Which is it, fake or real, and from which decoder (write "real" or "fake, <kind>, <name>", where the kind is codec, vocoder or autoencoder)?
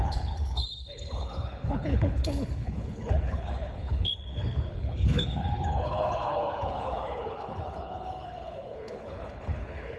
fake, codec, HILCodec